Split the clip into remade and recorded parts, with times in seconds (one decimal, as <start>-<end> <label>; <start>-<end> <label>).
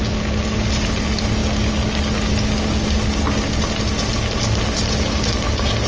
0.0-5.9 recorded